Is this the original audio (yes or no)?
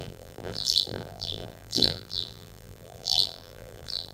no